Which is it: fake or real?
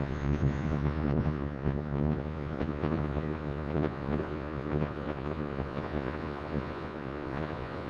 fake